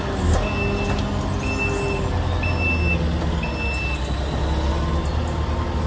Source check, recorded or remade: recorded